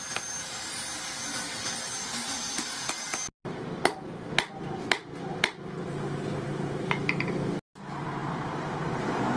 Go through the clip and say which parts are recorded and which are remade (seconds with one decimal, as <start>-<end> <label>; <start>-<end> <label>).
0.0-9.4 recorded